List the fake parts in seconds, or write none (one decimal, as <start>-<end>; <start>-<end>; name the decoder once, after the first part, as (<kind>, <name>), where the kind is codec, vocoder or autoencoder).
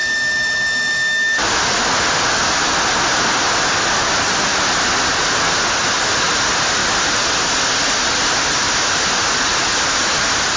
0.0-1.6 (autoencoder, DAC-VAE)